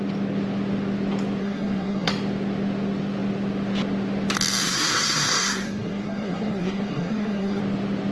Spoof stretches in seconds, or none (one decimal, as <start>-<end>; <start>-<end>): 1.4-2.1; 4.6-7.6